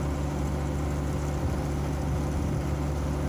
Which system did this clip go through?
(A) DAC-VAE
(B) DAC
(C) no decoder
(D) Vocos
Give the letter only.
C